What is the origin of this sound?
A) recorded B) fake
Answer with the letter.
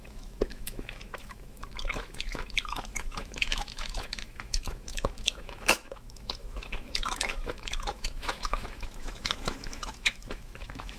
B